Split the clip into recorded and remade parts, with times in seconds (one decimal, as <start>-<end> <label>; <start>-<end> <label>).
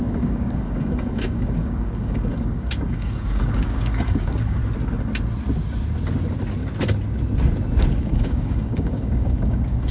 0.0-4.6 remade; 4.6-8.0 recorded; 8.0-9.9 remade